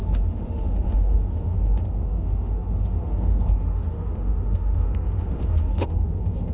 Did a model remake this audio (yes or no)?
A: yes